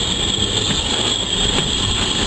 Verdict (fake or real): real